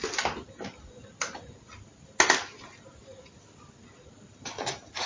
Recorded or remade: recorded